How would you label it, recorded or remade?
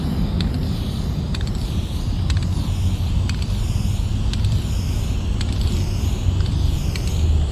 recorded